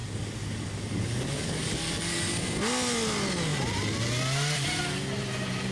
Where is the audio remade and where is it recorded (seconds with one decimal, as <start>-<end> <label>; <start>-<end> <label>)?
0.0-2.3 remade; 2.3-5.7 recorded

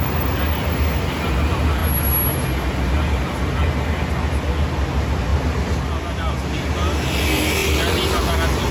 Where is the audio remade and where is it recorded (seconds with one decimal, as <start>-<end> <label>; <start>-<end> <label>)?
0.0-8.7 recorded

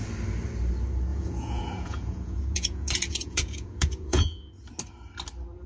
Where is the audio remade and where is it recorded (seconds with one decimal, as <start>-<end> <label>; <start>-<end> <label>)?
0.0-1.1 recorded; 1.1-4.5 remade; 4.5-5.7 recorded